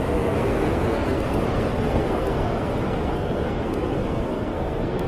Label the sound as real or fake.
fake